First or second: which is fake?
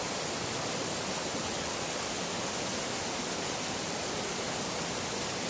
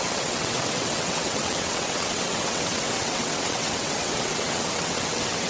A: second